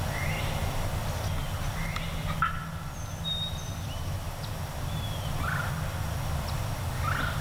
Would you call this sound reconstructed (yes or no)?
no